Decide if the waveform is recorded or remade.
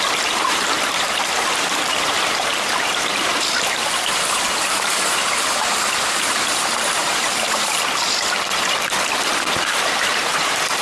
remade